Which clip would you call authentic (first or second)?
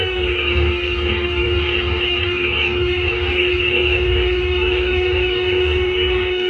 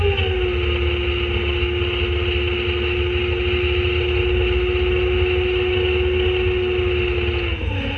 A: second